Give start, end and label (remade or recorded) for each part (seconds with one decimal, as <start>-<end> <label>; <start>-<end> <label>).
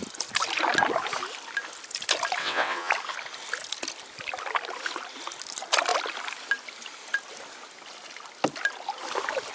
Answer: 0.0-2.4 recorded; 2.4-2.9 remade; 2.9-9.5 recorded